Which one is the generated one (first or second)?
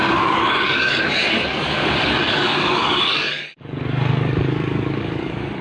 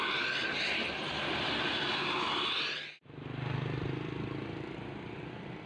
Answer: first